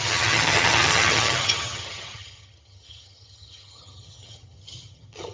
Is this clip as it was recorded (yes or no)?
no